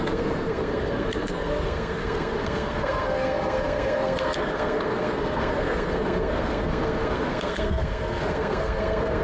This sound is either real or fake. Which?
fake